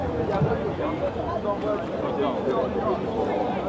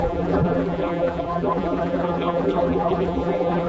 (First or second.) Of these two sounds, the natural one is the first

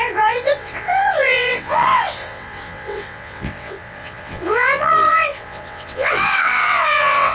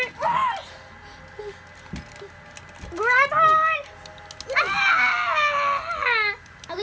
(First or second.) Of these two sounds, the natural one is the second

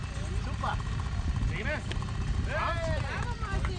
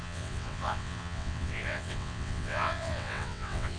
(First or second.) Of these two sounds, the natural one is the first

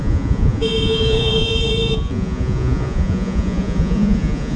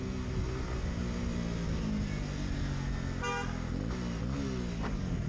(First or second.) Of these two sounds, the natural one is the second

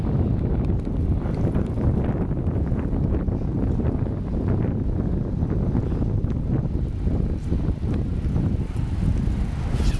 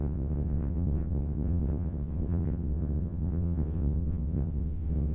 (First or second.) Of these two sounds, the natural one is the first